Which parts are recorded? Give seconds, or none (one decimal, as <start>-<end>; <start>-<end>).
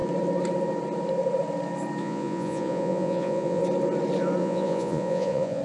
0.0-2.0; 3.6-4.4